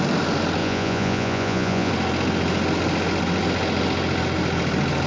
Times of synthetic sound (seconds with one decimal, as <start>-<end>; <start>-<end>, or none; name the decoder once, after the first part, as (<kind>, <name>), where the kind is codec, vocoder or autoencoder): 0.6-1.9 (vocoder, Vocos)